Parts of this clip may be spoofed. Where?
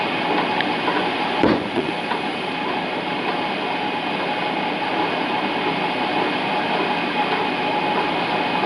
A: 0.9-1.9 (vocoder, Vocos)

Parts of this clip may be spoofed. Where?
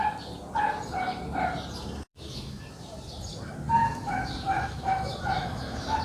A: 2.1-2.6 (autoencoder, DAC-VAE); 3.8-6.0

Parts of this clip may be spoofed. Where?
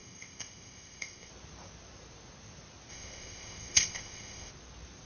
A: 0.0-1.3 (codec, ZipCodec); 2.9-4.5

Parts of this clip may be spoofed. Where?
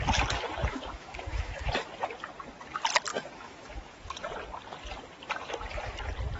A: 0.7-1.7 (autoencoder, DAC-VAE); 3.1-4.2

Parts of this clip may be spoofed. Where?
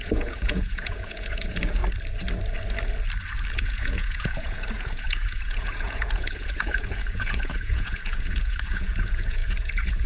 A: 0.0-1.8 (vocoder, Vocos); 3.5-10.1